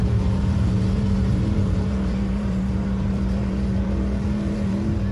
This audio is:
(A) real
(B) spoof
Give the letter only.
B